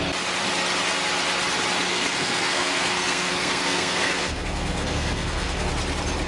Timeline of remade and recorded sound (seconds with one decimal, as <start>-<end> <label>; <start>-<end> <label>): 0.0-1.9 recorded; 1.9-5.7 remade; 5.7-6.3 recorded